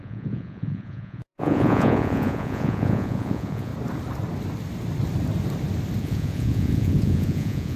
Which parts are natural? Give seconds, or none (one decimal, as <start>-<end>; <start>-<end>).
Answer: 3.7-6.0